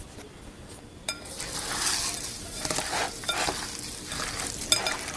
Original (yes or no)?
yes